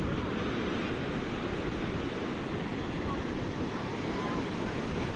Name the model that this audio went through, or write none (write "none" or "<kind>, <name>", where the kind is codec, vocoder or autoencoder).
none